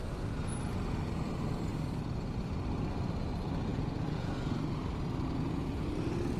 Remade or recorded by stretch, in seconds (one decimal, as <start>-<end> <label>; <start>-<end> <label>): 0.0-3.7 recorded; 3.7-4.3 remade; 4.3-6.4 recorded